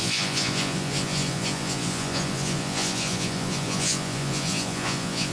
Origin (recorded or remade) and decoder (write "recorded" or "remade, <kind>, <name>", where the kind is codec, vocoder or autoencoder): remade, vocoder, Vocos